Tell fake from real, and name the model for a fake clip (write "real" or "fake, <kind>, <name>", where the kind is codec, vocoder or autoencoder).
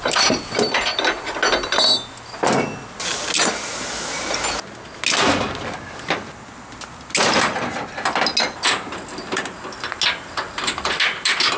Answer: real